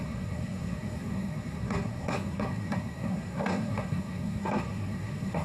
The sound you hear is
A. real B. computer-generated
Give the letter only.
B